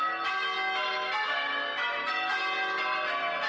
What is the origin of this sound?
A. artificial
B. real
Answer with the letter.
B